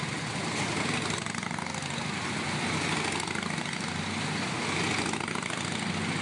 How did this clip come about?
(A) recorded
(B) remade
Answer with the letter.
A